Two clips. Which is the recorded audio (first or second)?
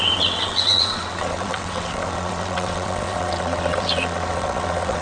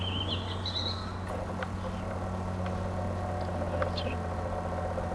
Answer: second